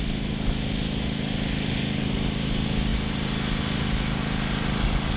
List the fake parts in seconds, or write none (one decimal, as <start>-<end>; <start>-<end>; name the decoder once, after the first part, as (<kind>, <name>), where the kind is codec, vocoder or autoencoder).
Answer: none